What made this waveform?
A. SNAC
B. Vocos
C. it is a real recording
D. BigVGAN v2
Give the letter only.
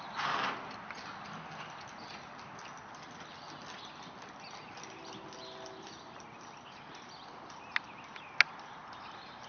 C